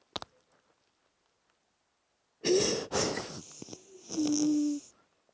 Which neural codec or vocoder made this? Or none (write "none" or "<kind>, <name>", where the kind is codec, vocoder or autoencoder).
none